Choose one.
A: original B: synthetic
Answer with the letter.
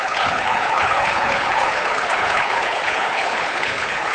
B